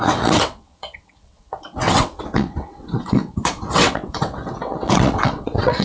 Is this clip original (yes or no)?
no